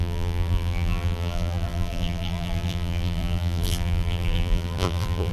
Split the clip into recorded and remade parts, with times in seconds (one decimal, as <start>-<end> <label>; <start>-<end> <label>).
0.0-5.3 remade